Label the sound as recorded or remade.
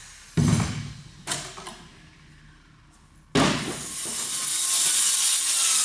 recorded